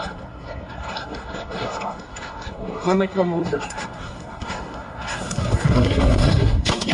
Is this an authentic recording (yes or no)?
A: no